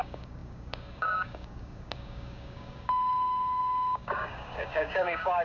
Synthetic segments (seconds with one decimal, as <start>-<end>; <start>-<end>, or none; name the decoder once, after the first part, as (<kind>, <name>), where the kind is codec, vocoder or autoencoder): 0.0-5.4 (codec, DAC)